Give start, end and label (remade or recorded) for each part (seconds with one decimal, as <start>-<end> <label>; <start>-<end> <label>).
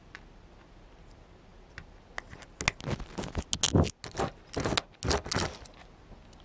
0.0-6.4 recorded